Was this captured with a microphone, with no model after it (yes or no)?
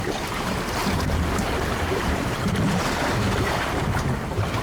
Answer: no